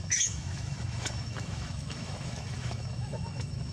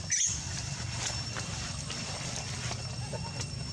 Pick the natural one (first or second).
second